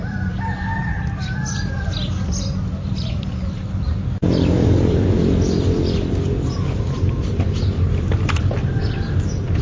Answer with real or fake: fake